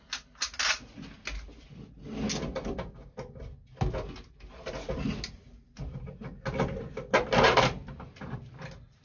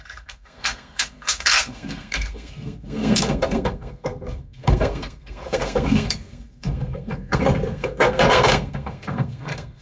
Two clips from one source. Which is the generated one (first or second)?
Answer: second